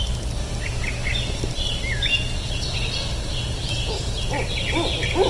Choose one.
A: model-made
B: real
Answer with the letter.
B